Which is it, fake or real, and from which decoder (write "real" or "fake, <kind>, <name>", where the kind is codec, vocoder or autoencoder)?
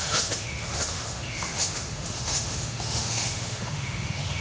fake, autoencoder, DAC-VAE